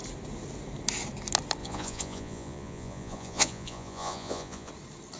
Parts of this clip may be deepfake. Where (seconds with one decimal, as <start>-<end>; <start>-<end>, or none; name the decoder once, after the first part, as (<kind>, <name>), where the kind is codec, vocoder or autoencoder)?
1.6-4.7 (vocoder, Vocos)